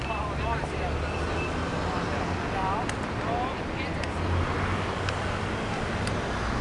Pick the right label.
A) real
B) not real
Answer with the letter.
A